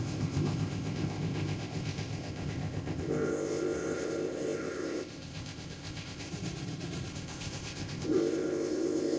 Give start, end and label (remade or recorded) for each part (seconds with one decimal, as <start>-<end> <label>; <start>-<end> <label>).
0.0-6.3 remade; 6.3-7.1 recorded; 7.1-9.2 remade